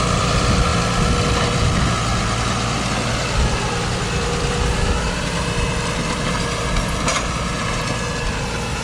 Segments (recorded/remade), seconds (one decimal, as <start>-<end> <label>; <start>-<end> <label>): 0.0-8.8 recorded